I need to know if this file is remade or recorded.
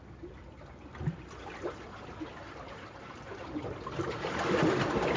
recorded